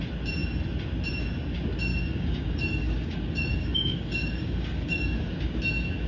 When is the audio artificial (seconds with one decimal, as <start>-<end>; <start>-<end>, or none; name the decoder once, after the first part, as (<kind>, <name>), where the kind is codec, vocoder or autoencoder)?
1.9-5.6 (codec, DAC)

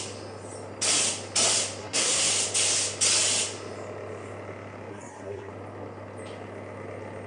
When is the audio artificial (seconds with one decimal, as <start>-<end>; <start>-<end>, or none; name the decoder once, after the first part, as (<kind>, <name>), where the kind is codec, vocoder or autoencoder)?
1.8-2.3 (codec, SNAC); 4.9-5.5